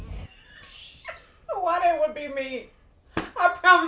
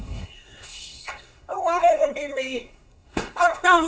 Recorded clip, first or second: first